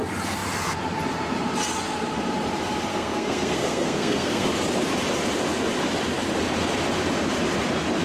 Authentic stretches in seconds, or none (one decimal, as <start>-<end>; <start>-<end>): 0.0-2.9; 4.5-8.0